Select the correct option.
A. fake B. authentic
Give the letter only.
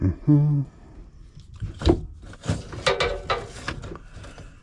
B